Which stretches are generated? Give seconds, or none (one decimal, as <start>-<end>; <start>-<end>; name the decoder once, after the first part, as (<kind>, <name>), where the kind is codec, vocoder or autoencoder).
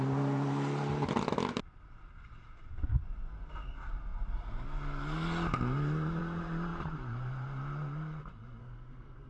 8.6-9.3 (codec, SNAC)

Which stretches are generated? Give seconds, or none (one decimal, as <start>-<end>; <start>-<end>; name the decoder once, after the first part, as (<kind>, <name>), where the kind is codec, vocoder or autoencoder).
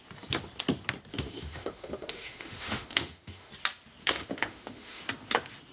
1.1-3.5 (autoencoder, DAC-VAE); 4.0-5.0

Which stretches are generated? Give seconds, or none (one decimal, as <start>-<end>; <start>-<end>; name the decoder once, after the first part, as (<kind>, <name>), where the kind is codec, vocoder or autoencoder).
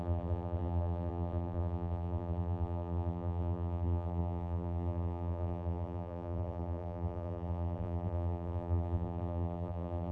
0.0-10.1 (vocoder, BigVGAN v2)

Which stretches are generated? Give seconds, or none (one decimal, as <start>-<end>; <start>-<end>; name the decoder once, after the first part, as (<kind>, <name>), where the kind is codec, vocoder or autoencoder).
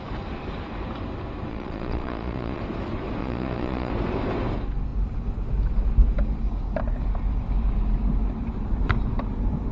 1.5-2.6 (vocoder, Vocos); 3.2-3.9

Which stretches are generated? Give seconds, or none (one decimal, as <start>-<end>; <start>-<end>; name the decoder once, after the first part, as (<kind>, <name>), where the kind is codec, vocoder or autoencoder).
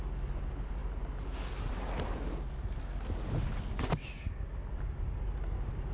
none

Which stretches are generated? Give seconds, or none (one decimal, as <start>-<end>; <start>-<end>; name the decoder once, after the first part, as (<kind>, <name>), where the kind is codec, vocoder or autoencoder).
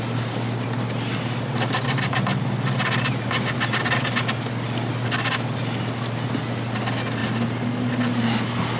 none